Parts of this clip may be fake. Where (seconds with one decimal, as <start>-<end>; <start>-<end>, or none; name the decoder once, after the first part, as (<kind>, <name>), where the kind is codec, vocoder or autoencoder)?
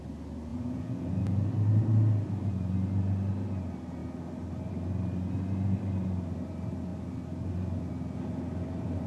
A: 0.5-1.1 (vocoder, Vocos)